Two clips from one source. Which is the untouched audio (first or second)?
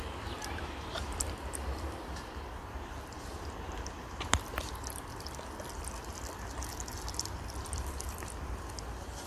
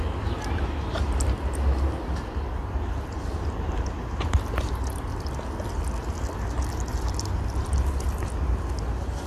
second